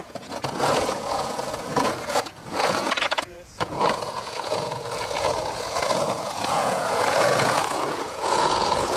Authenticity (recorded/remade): remade